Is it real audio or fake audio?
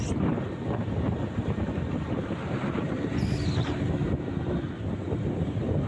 fake